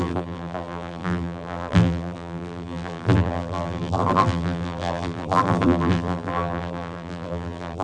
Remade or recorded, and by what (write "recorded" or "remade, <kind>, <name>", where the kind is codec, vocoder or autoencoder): remade, vocoder, BigVGAN v2